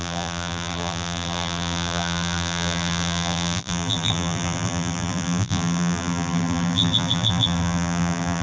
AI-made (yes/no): yes